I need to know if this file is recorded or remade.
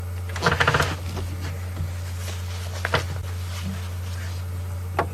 recorded